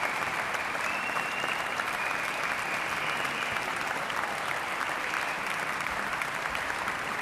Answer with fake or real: fake